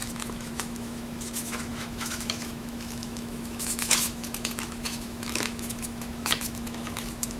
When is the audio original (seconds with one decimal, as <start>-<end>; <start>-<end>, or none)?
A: none